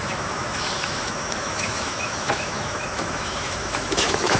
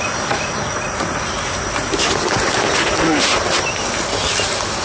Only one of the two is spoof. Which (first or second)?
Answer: first